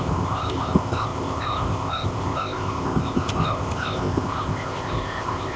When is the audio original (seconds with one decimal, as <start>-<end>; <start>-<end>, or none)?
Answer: none